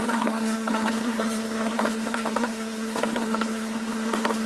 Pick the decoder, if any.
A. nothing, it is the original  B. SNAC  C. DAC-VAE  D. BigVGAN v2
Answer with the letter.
B